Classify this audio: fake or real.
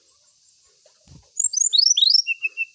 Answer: real